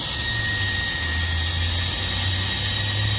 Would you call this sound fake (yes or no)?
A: no